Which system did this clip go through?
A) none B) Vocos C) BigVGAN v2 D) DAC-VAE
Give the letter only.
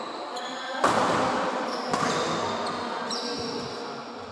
A